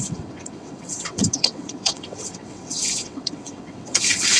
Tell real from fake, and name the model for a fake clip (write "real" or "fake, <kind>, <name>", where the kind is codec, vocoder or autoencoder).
fake, vocoder, WaveNeXt